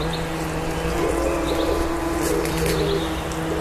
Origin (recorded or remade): recorded